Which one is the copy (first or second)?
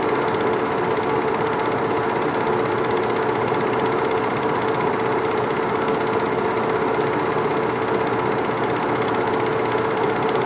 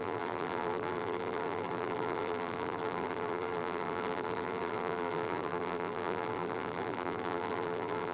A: second